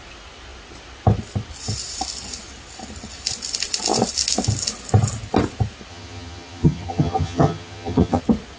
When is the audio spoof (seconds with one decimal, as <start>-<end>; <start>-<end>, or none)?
5.9-8.2

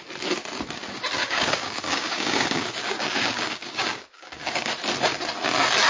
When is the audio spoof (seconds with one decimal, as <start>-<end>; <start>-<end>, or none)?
1.2-4.7

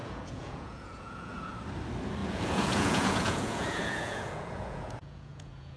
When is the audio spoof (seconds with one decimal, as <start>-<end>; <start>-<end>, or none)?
0.0-1.5; 2.2-5.8

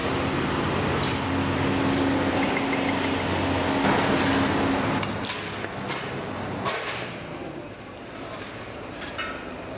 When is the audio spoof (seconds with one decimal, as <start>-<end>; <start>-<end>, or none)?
none

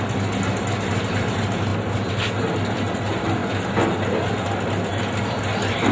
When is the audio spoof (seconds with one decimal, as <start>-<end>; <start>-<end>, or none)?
none

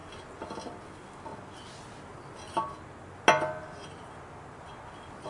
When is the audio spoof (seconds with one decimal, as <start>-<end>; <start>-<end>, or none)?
none

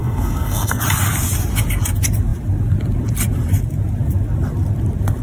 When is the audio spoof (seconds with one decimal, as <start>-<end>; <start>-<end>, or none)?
0.0-0.8